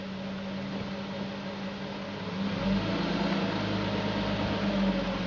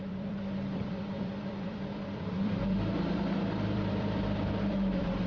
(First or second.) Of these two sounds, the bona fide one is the first